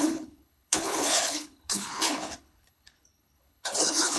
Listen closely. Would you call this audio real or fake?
fake